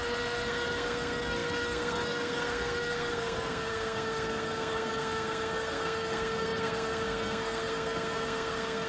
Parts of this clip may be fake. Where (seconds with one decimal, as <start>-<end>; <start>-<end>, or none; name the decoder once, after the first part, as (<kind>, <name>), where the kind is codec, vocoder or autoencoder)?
0.0-8.9 (codec, SNAC)